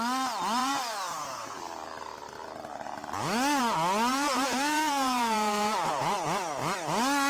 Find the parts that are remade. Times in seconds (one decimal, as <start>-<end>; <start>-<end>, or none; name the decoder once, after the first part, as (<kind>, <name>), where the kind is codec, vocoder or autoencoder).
0.6-1.6 (vocoder, Vocos); 4.1-6.1